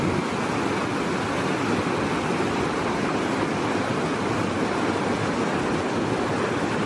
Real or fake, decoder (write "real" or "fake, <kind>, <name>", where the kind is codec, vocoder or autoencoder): real